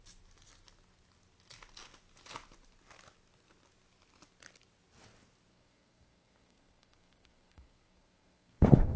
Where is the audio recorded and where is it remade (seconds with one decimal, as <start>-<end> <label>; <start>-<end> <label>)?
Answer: 0.0-5.5 recorded; 5.5-9.0 remade

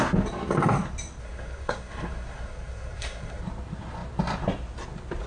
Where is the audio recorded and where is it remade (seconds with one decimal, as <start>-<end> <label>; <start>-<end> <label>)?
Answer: 0.0-1.2 recorded; 1.2-3.4 remade; 3.4-5.3 recorded

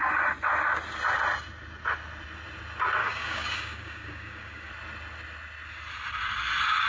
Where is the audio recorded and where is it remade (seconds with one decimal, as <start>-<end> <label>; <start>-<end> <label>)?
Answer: 0.0-3.0 recorded; 3.0-4.7 remade; 4.7-6.9 recorded